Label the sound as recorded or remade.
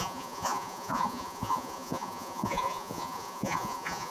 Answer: remade